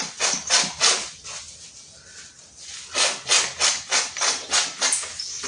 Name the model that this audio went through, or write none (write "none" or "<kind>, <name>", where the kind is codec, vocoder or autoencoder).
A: none